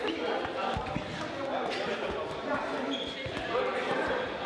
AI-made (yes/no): no